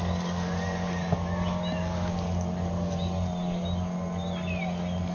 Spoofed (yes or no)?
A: no